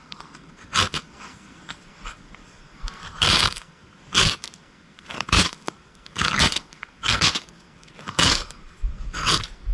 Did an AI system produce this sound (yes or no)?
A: yes